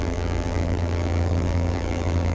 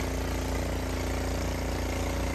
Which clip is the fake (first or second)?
first